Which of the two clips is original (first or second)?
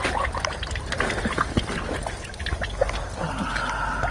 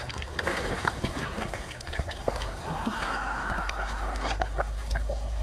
first